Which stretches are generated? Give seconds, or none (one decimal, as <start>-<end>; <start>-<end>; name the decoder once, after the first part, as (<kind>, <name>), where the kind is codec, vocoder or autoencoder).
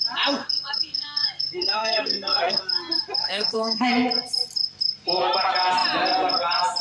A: 0.4-2.6 (codec, SNAC); 3.2-3.9